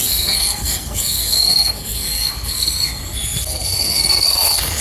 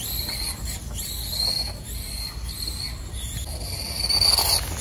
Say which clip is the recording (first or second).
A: second